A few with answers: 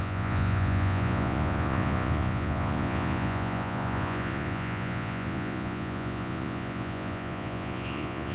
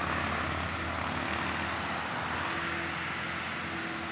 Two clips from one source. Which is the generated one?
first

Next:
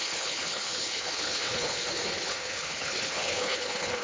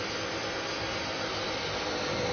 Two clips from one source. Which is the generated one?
first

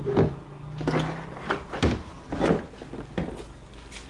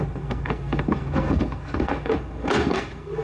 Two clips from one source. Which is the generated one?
second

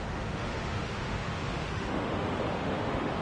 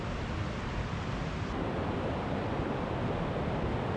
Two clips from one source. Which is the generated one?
first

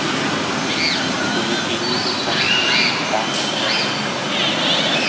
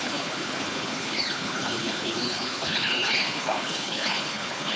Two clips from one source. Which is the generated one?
second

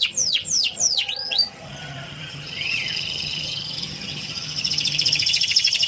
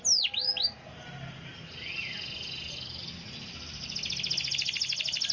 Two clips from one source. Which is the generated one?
first